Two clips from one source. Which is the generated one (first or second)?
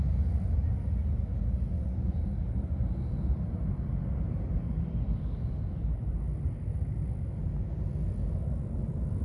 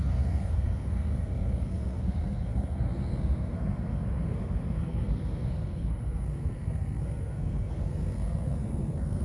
second